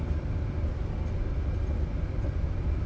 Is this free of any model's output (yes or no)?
yes